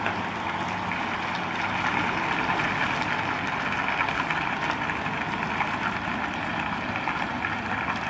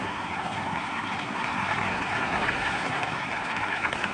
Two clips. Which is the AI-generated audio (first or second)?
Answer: second